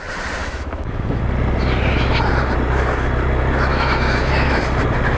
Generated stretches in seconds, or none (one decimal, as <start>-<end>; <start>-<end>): 0.4-1.2; 3.7-4.6